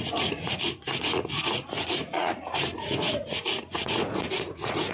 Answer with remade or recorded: remade